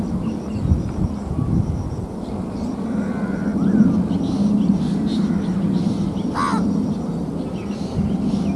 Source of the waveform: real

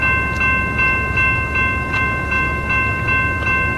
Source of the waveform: real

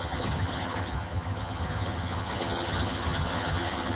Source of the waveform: fake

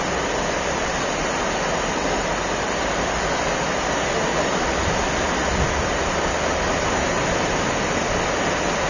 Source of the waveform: real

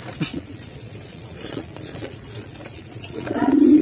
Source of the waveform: fake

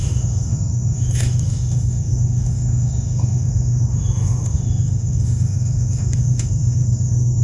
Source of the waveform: fake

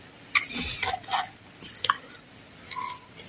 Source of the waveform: real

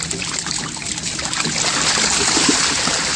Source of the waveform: real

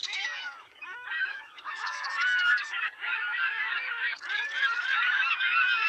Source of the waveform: fake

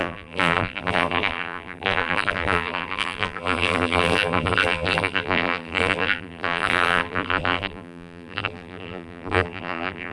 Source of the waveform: fake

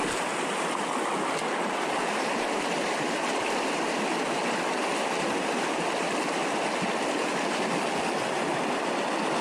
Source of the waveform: real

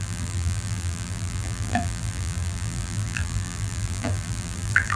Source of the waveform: fake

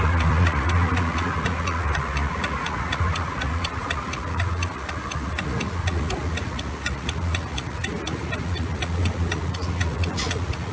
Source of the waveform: fake